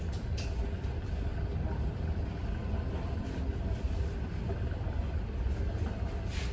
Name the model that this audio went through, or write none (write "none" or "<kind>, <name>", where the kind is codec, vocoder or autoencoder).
none